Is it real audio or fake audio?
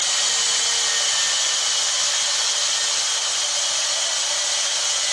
real